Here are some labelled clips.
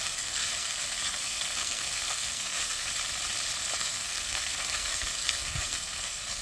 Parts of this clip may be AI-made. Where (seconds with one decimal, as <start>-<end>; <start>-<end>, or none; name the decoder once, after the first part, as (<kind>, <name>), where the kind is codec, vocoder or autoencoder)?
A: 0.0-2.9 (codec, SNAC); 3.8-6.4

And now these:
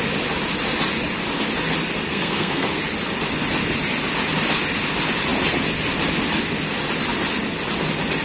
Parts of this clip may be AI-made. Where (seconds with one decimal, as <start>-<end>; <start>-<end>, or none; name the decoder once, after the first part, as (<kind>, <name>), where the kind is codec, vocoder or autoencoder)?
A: 2.1-2.8 (codec, SNAC)

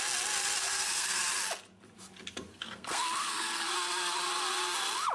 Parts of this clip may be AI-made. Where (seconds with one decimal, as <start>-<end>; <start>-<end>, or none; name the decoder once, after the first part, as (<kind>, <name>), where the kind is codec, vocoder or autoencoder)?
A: 0.6-1.2 (codec, SNAC); 2.5-3.7